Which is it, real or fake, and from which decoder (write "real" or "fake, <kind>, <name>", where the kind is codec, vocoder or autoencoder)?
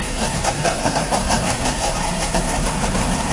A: fake, codec, SNAC